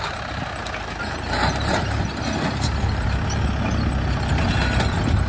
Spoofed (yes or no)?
no